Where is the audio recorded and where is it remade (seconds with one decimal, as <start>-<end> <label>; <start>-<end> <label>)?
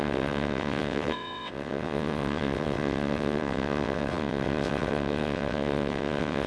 0.0-6.5 remade